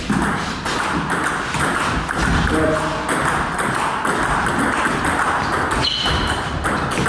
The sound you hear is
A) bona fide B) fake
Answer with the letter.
A